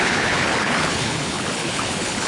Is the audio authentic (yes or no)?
no